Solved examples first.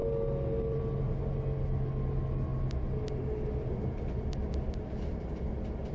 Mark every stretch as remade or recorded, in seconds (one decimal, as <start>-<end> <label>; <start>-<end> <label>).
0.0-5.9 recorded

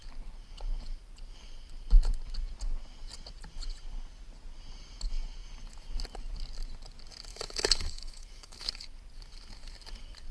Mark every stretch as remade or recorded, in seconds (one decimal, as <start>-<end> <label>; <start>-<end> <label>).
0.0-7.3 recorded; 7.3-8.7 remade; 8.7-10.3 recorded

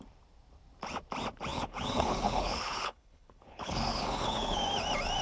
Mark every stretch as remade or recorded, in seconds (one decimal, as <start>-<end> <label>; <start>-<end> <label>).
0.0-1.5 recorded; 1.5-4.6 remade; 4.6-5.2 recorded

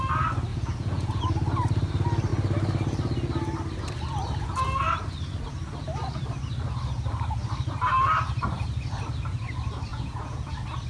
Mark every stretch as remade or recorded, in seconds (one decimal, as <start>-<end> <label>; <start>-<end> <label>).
0.0-0.5 recorded; 0.5-1.2 remade; 1.2-9.9 recorded; 9.9-10.5 remade; 10.5-10.9 recorded

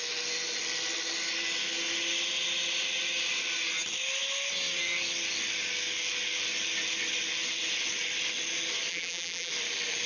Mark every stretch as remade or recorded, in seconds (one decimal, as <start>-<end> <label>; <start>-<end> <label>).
0.0-8.9 recorded; 8.9-9.5 remade; 9.5-10.1 recorded

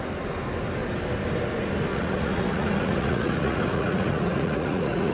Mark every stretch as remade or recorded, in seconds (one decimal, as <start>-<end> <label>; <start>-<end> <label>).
0.0-1.9 recorded; 1.9-5.1 remade

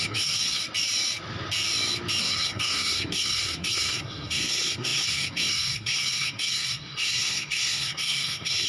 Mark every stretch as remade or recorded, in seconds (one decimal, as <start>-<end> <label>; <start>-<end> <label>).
0.0-0.6 remade; 0.6-2.2 recorded; 2.2-8.7 remade